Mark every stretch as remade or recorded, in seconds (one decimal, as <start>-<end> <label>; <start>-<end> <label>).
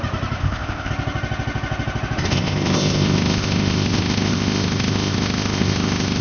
0.0-0.4 recorded; 0.4-0.9 remade; 0.9-2.3 recorded; 2.3-6.2 remade